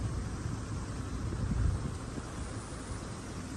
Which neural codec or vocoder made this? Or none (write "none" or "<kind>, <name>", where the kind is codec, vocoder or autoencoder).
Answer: none